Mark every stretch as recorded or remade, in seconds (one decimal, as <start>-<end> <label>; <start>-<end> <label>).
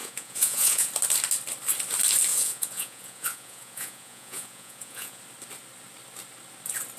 0.0-0.9 remade; 0.9-2.3 recorded; 2.3-5.2 remade; 5.2-7.0 recorded